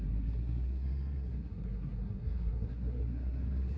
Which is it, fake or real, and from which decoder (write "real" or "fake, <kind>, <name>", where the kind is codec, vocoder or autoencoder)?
fake, codec, SNAC